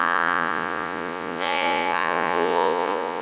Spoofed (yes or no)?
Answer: yes